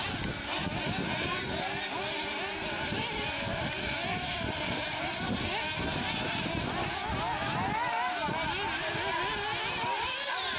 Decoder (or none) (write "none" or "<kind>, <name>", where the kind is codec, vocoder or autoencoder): none